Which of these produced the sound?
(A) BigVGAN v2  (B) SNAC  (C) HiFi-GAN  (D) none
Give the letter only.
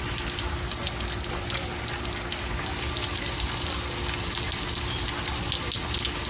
D